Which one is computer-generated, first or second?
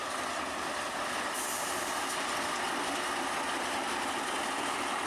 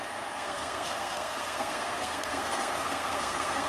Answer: second